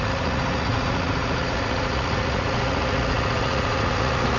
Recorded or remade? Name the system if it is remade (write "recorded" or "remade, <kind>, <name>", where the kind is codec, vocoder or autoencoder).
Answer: remade, vocoder, Vocos